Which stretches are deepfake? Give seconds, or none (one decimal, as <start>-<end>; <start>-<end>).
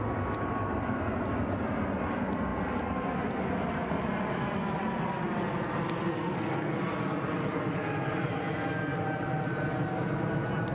6.1-6.7